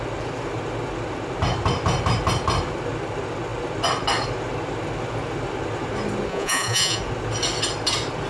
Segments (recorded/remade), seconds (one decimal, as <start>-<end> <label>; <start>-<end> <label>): 0.0-6.3 recorded; 6.3-7.0 remade; 7.0-8.3 recorded